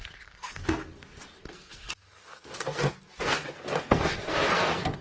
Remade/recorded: remade